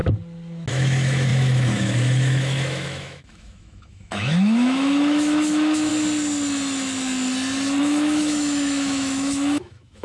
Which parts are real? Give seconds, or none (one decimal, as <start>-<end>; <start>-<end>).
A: 0.0-0.7; 5.9-7.8